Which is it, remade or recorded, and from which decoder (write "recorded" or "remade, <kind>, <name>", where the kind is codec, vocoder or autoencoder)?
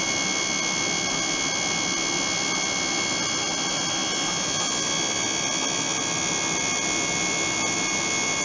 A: recorded